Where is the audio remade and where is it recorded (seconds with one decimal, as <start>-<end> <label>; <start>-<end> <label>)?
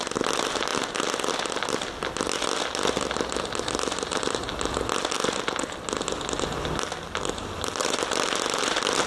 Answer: 0.0-9.1 recorded